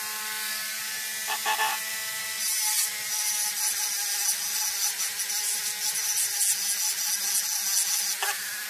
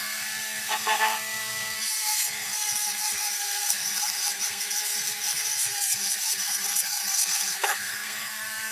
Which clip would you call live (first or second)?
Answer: first